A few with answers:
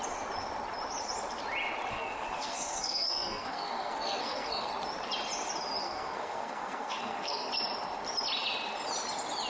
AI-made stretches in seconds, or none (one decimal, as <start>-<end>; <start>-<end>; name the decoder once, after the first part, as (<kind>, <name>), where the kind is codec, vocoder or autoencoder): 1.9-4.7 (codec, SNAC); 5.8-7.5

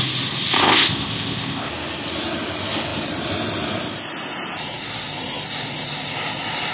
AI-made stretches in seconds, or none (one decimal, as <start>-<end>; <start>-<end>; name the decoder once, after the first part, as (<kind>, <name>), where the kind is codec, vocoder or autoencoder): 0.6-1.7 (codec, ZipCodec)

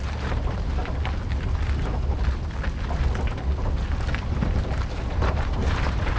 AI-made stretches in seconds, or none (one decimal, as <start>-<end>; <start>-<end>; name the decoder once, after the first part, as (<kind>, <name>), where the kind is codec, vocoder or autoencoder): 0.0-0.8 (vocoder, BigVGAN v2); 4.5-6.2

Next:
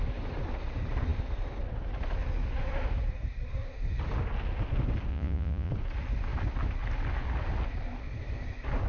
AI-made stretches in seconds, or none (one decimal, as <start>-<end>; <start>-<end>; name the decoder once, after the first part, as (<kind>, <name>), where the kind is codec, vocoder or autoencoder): 5.1-5.7 (vocoder, Vocos)

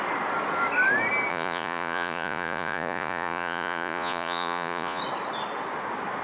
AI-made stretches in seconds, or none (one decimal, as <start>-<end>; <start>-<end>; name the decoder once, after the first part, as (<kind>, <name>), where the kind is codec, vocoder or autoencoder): 1.3-5.0 (vocoder, Vocos)